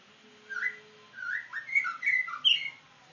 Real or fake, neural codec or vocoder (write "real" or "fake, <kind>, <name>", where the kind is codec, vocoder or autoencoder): real